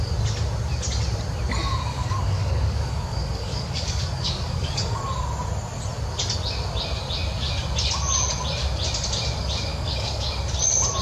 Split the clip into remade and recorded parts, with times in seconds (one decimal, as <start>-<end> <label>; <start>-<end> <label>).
0.0-1.9 recorded; 1.9-5.0 remade; 5.0-9.7 recorded; 9.7-10.4 remade; 10.4-11.0 recorded

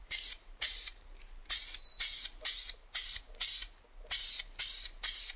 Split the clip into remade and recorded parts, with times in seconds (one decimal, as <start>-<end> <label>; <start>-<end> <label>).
0.0-5.4 remade

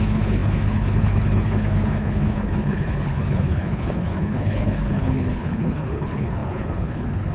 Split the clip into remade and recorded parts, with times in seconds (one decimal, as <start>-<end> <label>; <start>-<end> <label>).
0.0-7.3 remade

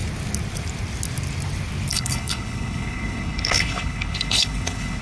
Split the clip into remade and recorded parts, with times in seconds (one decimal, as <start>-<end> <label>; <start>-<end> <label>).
0.0-1.9 recorded; 1.9-5.0 remade

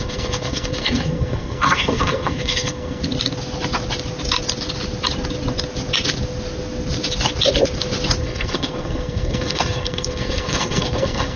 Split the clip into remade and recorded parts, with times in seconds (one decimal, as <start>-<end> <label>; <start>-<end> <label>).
0.0-3.0 remade; 3.0-8.2 recorded; 8.2-11.4 remade

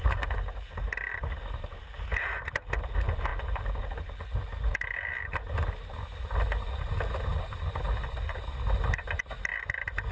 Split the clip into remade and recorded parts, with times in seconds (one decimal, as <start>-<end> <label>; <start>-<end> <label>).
0.0-10.1 recorded